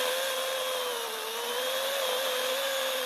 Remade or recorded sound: recorded